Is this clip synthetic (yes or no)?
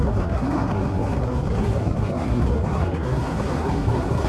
yes